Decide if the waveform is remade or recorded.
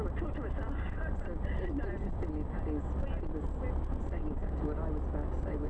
recorded